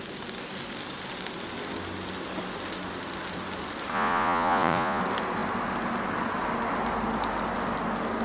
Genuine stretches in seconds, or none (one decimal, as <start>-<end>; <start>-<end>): 0.0-3.9; 5.0-8.2